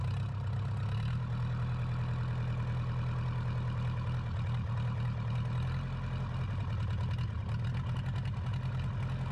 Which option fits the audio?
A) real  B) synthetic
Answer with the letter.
A